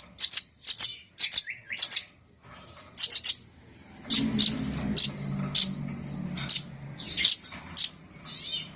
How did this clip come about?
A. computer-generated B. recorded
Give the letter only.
B